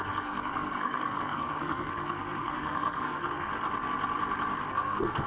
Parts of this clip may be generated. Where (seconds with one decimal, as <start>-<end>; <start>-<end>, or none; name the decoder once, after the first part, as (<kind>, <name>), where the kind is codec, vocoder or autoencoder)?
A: 0.0-3.5 (codec, SNAC); 4.7-5.3